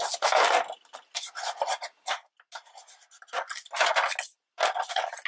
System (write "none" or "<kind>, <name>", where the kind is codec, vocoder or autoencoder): none